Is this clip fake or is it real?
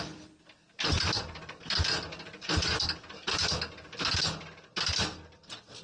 real